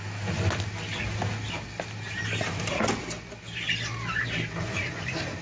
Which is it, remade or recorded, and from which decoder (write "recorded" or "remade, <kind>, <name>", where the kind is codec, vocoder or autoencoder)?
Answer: recorded